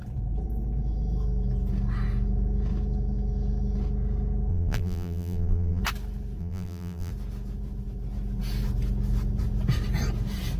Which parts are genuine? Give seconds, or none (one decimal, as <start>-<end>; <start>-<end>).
0.0-4.5; 5.8-6.4; 7.1-10.6